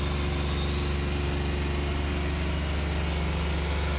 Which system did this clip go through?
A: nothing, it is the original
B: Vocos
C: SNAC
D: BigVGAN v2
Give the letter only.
A